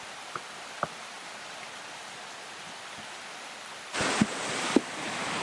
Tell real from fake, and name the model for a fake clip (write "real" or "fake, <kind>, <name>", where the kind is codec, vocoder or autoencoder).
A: fake, vocoder, BigVGAN v2